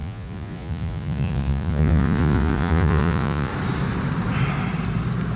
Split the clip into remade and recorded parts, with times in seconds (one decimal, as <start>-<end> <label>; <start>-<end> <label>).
0.0-3.5 remade; 3.5-5.4 recorded